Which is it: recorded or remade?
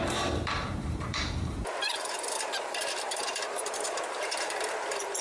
remade